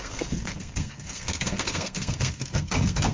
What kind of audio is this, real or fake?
fake